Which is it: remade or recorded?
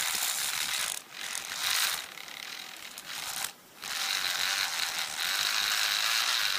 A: recorded